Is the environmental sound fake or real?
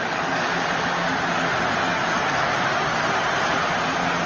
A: real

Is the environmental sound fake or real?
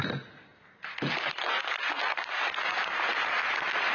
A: real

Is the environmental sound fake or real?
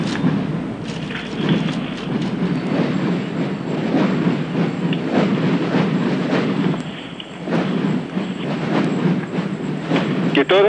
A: real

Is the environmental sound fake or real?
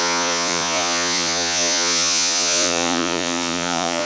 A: fake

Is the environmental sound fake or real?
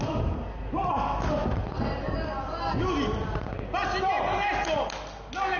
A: real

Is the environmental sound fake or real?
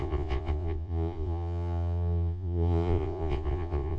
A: fake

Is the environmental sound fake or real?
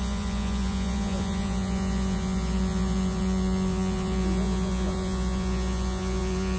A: fake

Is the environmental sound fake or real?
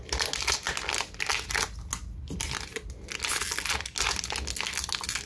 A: real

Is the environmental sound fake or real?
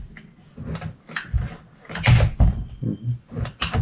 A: real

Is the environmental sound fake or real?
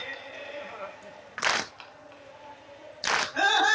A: real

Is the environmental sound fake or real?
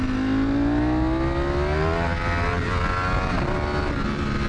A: real